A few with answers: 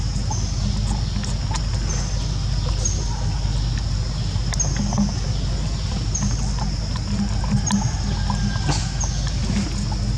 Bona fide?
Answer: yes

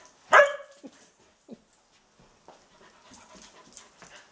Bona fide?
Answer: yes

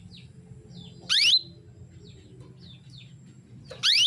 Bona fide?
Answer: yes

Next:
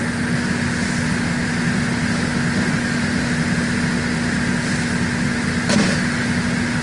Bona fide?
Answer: yes